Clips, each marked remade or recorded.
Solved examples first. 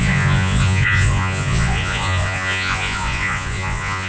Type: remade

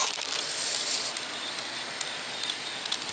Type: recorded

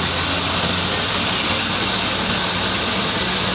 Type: recorded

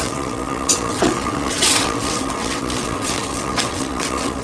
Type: remade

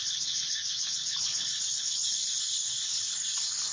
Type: remade